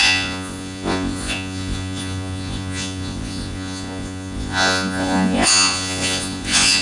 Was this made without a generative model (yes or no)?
no